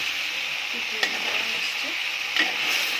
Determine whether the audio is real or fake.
real